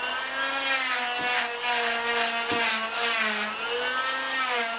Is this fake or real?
real